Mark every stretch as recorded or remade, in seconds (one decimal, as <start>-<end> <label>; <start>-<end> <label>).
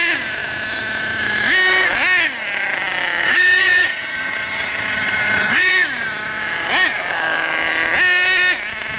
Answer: 0.0-3.2 recorded; 3.2-5.7 remade; 5.7-9.0 recorded